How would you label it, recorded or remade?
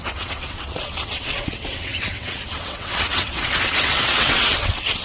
remade